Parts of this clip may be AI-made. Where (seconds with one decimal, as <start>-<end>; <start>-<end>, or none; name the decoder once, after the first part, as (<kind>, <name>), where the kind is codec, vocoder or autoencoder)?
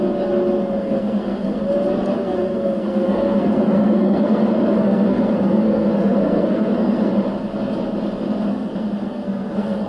0.8-1.6 (codec, SNAC); 2.1-7.1; 8.5-9.9